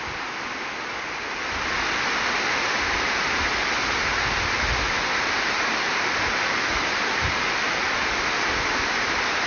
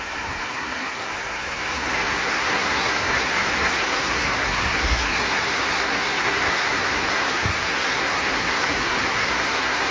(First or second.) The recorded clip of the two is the first